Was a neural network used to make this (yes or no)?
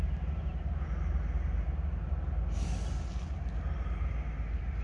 no